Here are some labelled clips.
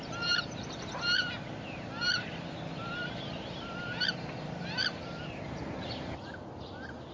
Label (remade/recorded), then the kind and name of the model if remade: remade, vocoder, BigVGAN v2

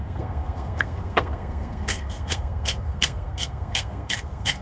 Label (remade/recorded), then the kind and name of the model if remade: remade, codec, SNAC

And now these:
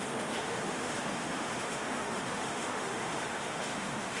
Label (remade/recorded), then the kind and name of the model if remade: remade, autoencoder, DAC-VAE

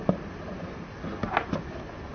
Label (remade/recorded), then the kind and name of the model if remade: recorded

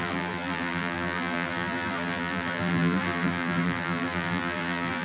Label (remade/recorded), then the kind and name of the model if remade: remade, vocoder, BigVGAN v2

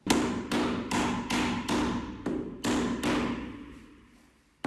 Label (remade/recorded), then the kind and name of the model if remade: recorded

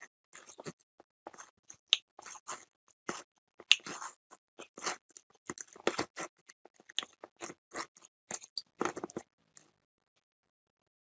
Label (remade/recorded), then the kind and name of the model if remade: recorded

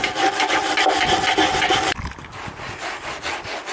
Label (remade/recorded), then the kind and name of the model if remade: recorded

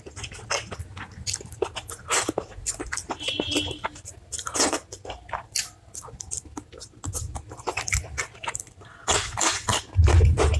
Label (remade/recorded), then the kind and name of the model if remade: recorded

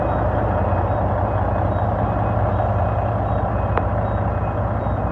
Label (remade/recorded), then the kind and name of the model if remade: recorded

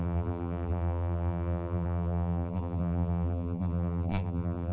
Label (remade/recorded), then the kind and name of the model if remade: remade, vocoder, BigVGAN v2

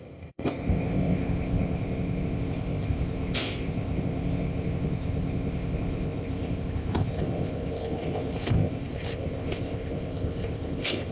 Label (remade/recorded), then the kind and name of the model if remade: remade, codec, ZipCodec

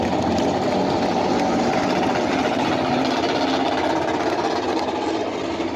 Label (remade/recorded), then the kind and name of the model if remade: recorded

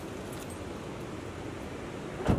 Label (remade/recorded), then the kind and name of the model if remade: recorded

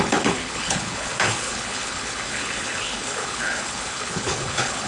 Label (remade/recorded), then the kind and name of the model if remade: remade, codec, HILCodec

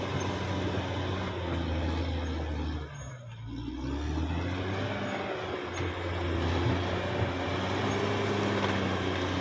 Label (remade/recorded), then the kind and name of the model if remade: recorded